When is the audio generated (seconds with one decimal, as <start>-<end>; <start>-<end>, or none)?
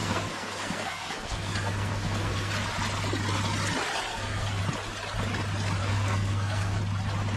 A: 0.0-2.5; 4.1-4.6; 5.8-6.8